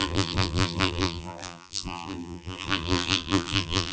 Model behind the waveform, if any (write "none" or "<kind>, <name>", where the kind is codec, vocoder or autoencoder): vocoder, BigVGAN v2